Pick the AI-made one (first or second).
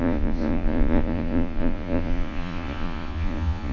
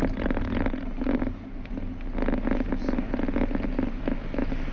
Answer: first